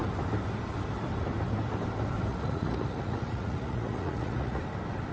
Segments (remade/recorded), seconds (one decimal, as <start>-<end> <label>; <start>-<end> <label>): 0.0-2.3 recorded; 2.3-4.6 remade; 4.6-5.1 recorded